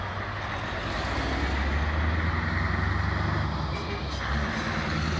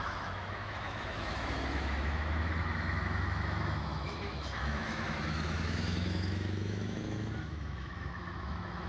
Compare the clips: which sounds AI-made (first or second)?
second